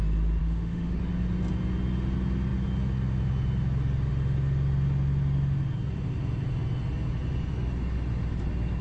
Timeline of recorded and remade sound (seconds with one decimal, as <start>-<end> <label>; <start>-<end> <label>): 0.0-0.4 recorded; 0.4-1.0 remade; 1.0-8.8 recorded